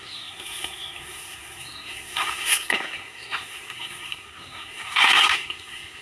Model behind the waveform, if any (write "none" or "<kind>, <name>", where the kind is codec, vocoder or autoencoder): codec, SNAC